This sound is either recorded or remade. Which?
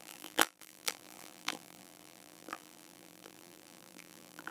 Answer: remade